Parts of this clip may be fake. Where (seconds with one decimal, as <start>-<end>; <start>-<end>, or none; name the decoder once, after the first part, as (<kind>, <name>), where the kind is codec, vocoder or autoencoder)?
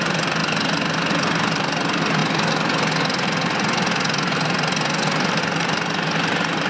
0.0-0.4 (vocoder, BigVGAN v2); 1.1-2.2; 5.4-6.7